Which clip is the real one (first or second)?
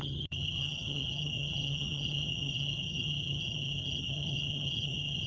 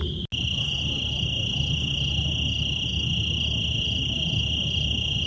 second